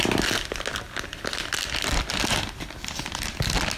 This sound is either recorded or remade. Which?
recorded